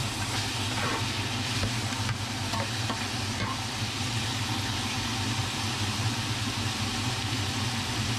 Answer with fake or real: fake